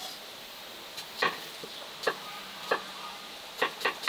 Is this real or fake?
real